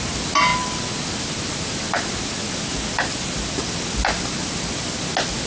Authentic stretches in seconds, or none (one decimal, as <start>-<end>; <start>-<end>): 0.0-5.5